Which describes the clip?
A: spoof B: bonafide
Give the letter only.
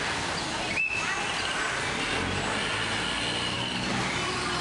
B